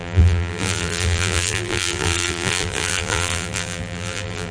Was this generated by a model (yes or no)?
yes